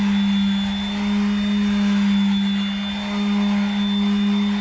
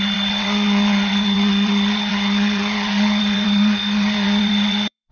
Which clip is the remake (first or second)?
second